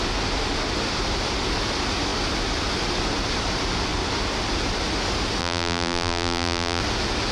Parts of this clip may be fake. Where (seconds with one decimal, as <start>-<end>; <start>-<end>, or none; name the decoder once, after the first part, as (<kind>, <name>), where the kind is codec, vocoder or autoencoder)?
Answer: 5.4-6.8 (vocoder, BigVGAN v2)